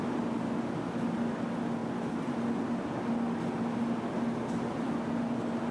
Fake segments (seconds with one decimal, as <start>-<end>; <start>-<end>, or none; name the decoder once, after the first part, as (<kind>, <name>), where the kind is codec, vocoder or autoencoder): none